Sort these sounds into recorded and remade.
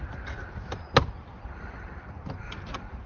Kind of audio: recorded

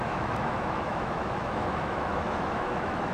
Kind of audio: remade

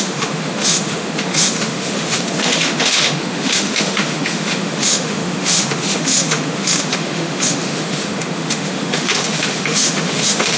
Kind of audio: remade